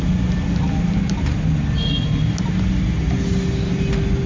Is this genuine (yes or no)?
yes